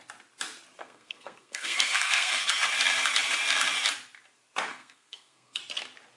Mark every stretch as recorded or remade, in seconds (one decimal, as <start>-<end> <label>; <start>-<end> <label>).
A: 0.0-0.8 recorded; 0.8-2.5 remade; 2.5-4.7 recorded; 4.7-5.6 remade; 5.6-6.2 recorded